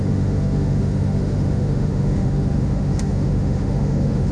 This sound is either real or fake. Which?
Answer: fake